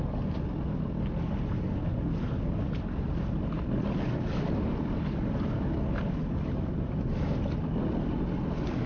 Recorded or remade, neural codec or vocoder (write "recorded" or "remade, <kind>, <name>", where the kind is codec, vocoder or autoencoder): recorded